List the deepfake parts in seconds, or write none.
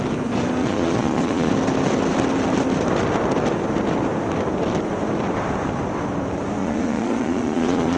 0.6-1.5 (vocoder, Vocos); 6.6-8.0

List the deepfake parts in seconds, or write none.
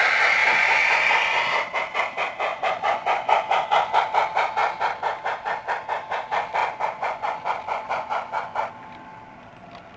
0.4-1.4 (vocoder, Vocos); 2.5-4.0; 6.6-8.7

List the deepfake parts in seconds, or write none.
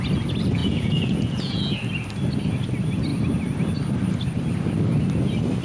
0.6-1.6 (vocoder, Vocos)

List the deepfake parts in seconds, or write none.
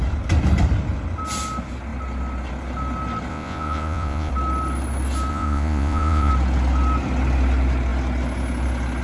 3.3-4.3 (vocoder, Vocos); 5.3-6.3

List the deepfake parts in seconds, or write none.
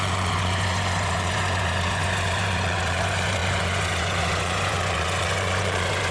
0.0-6.1 (vocoder, Vocos)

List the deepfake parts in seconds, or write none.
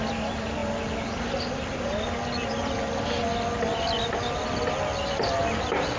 none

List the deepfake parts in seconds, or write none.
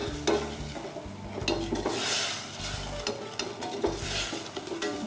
none